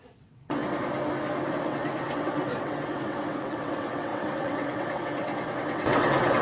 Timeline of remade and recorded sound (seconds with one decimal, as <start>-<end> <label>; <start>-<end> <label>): 0.0-0.6 remade; 0.6-1.5 recorded; 1.5-6.4 remade